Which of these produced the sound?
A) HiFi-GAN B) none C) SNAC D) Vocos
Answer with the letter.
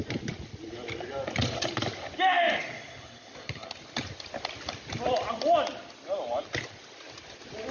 B